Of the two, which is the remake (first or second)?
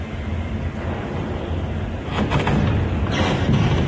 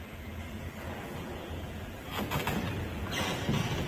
second